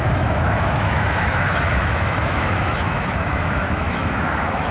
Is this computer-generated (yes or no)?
yes